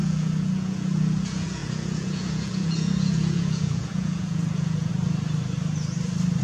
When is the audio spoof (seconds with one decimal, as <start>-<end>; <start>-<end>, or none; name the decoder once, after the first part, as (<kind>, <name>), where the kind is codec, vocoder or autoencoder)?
0.0-4.9 (vocoder, Vocos)